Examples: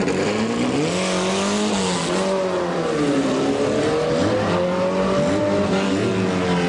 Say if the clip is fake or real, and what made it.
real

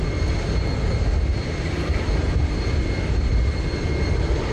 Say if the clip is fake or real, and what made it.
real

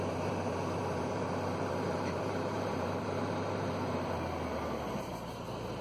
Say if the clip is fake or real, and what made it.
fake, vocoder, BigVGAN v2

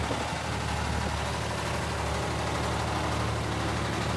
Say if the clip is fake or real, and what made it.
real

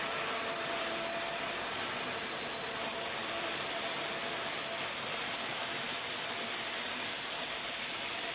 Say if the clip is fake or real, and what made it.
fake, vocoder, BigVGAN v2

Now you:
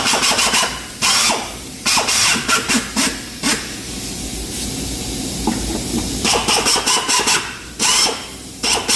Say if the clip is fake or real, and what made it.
fake, vocoder, BigVGAN v2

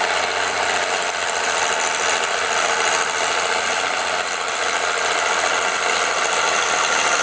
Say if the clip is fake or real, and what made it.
real